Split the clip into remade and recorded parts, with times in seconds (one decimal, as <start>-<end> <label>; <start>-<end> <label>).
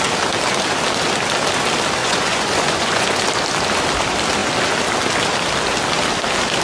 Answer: 0.0-2.0 recorded; 2.0-3.2 remade; 3.2-6.6 recorded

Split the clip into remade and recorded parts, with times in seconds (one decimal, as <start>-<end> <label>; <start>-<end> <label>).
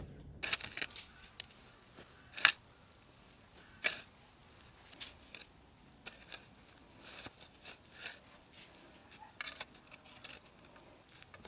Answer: 0.0-11.5 recorded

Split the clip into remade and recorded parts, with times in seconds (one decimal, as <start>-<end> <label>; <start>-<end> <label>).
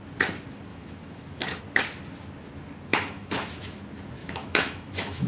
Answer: 0.0-0.7 recorded; 0.7-1.6 remade; 1.6-2.9 recorded; 2.9-3.8 remade; 3.8-4.2 recorded; 4.2-5.3 remade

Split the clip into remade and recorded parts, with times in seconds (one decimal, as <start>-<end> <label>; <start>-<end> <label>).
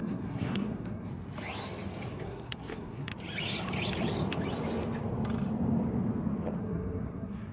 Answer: 0.0-1.1 remade; 1.1-2.1 recorded; 2.1-3.1 remade; 3.1-6.6 recorded; 6.6-7.5 remade